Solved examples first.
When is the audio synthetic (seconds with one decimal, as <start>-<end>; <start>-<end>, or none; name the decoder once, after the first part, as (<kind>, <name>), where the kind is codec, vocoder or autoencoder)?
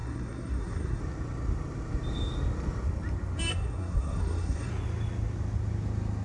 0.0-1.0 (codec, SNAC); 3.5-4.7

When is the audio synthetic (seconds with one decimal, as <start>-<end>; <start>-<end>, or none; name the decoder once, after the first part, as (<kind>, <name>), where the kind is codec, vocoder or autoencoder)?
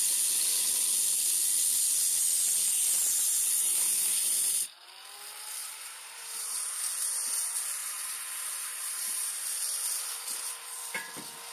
4.1-4.9 (vocoder, BigVGAN v2); 5.6-6.7; 7.8-9.3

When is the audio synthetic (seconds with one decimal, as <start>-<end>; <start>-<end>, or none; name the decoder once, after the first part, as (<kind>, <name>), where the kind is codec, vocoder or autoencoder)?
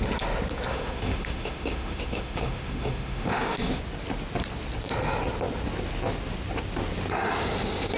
0.7-3.8 (autoencoder, DAC-VAE)